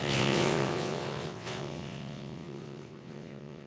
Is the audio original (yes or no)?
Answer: no